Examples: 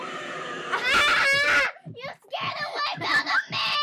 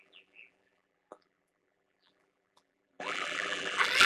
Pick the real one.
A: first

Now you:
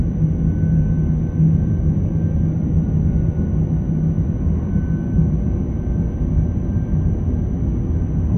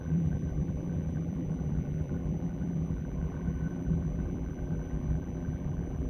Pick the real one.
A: first